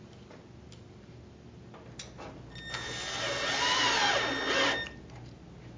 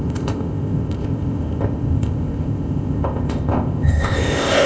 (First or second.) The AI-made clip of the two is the second